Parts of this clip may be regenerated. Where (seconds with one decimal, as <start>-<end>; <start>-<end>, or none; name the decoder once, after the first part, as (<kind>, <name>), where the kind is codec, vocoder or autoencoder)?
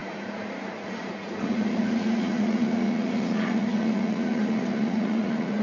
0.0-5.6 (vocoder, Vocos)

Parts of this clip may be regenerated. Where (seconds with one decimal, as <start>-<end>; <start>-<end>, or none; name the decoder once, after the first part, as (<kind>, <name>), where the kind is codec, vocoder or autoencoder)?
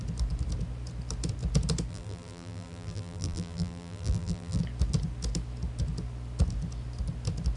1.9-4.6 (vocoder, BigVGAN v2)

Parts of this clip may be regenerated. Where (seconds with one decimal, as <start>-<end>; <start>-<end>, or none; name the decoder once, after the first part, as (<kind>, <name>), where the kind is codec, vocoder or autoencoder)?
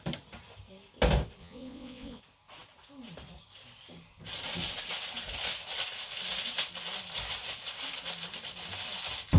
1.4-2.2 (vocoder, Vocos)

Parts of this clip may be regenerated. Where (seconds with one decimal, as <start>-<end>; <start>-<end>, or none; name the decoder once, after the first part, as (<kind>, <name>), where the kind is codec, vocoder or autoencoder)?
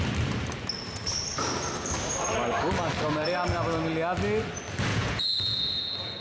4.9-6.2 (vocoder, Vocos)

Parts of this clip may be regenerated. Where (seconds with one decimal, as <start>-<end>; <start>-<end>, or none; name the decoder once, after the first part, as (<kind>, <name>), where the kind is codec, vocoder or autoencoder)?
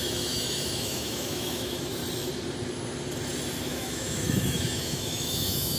0.0-2.0 (autoencoder, DAC-VAE); 3.6-5.8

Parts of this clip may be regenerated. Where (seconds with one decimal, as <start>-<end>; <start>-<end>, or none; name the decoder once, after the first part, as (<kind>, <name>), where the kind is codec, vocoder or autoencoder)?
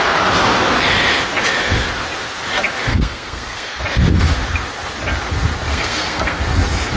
2.9-3.8 (codec, SNAC); 5.7-6.4